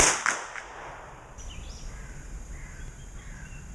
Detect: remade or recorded recorded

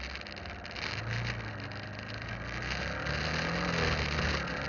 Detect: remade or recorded recorded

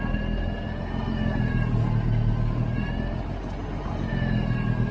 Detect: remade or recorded recorded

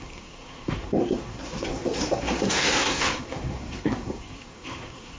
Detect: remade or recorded remade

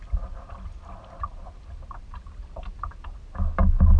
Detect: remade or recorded recorded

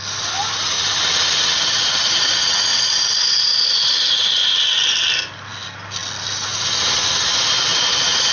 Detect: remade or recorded recorded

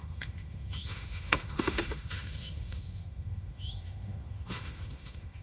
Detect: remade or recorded remade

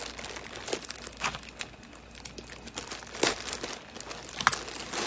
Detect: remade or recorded recorded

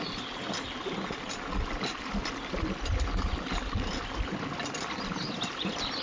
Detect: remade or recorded recorded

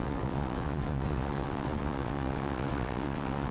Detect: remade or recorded remade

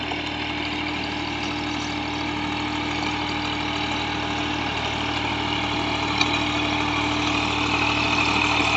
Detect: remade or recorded recorded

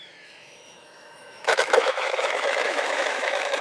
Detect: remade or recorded remade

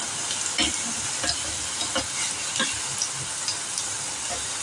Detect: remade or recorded recorded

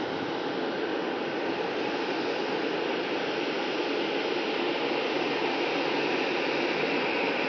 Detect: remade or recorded recorded